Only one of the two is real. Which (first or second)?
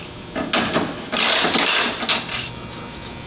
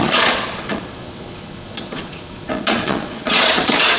first